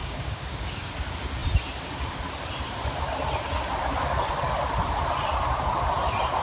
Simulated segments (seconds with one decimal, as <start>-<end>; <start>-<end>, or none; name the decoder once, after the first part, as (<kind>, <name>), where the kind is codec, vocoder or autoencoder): 0.0-0.9 (codec, DAC)

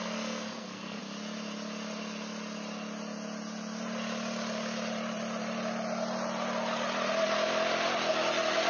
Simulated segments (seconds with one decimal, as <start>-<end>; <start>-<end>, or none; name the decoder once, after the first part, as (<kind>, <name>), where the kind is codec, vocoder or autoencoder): 0.0-1.0 (codec, SNAC)

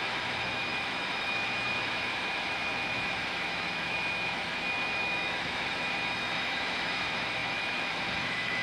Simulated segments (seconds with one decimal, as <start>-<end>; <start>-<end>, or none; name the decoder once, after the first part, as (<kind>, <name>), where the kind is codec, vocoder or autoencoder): 0.0-8.6 (autoencoder, DAC-VAE)

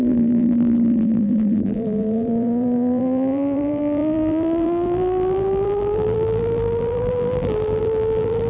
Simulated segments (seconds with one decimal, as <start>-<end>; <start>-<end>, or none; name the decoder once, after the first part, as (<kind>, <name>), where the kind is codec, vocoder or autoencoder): 0.0-8.5 (vocoder, BigVGAN v2)